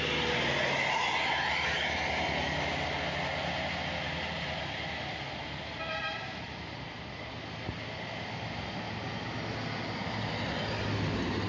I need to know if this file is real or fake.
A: real